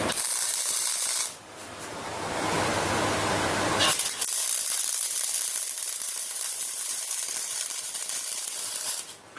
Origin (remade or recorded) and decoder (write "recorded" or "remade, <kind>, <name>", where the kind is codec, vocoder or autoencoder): remade, vocoder, BigVGAN v2